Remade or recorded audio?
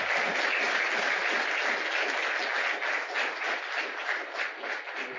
recorded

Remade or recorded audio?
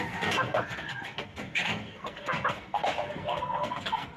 remade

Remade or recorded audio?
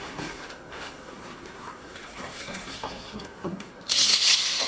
remade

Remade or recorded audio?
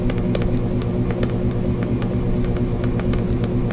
recorded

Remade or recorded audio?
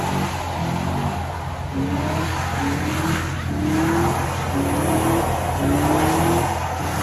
recorded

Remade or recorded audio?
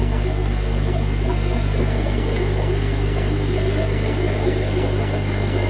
remade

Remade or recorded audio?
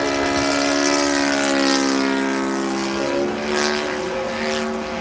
recorded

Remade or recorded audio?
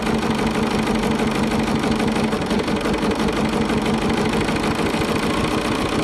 recorded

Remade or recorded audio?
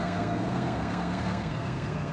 remade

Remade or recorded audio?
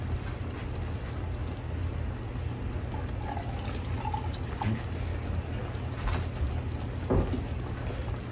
recorded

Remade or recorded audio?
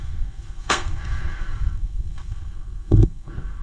remade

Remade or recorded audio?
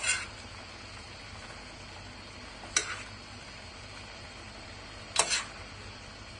recorded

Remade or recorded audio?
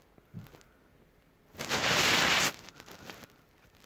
recorded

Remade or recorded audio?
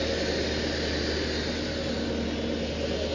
recorded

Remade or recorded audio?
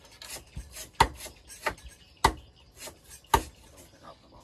recorded